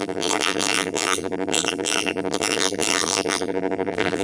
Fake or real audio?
fake